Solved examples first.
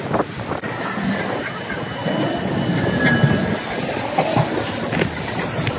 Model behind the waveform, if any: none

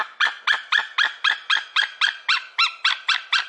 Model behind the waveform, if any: none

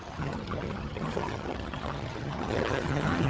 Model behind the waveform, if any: vocoder, HiFi-GAN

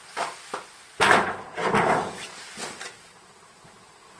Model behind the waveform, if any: none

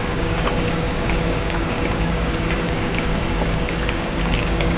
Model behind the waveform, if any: codec, DAC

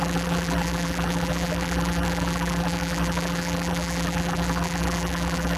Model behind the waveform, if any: vocoder, BigVGAN v2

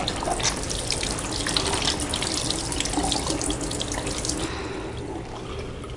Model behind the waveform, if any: none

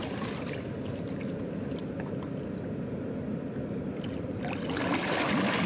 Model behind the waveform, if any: none